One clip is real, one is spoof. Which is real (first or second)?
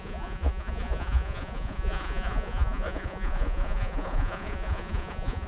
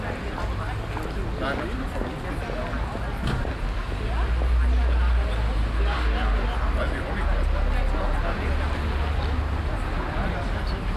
second